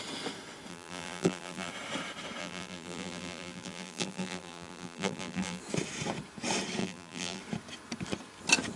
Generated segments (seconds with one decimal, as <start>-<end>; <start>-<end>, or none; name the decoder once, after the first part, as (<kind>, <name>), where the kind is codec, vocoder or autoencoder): 0.7-1.7 (vocoder, BigVGAN v2); 2.4-5.6; 6.8-7.4

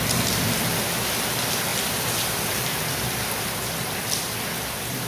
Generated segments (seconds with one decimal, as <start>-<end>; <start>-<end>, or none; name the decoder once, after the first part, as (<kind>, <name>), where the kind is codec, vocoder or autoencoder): 1.7-5.1 (vocoder, BigVGAN v2)

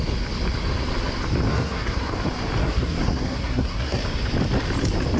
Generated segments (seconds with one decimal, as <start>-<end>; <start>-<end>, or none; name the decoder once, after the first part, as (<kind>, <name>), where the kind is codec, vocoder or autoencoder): 1.5-2.1 (codec, SNAC); 2.6-4.0

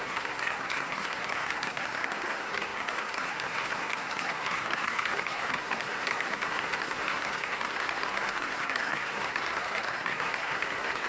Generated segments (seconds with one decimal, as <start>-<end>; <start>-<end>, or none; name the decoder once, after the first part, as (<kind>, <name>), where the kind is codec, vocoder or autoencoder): 0.0-11.1 (codec, SNAC)

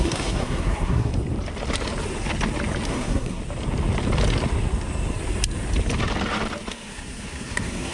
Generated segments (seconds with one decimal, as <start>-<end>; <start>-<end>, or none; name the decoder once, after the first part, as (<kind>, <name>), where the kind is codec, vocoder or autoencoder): 0.0-1.1 (codec, SNAC); 2.9-3.4; 6.7-7.9

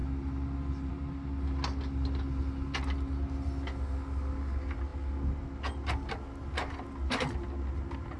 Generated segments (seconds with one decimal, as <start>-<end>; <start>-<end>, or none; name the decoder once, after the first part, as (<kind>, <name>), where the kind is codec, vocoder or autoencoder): none